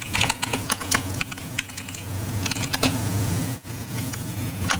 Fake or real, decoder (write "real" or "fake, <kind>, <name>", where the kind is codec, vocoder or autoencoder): fake, vocoder, Vocos